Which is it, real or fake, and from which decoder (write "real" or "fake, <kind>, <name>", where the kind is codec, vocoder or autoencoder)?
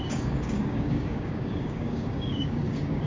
fake, codec, DAC